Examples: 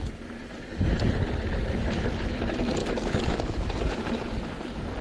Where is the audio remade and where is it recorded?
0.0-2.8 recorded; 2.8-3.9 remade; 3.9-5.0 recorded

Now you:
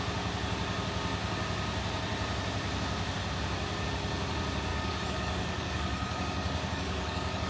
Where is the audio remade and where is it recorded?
0.0-4.7 recorded; 4.7-7.5 remade